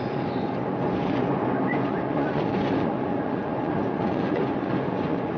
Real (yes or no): no